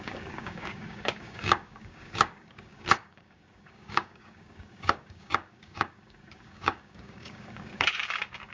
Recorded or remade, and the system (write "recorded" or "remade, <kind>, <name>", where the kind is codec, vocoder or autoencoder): remade, codec, DAC